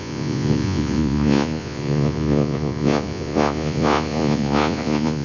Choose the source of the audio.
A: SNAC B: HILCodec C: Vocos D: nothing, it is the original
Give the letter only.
C